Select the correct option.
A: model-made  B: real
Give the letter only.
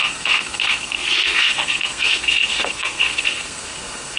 A